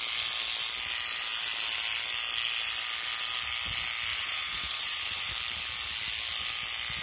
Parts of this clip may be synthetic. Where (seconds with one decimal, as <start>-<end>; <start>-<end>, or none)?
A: 4.1-5.3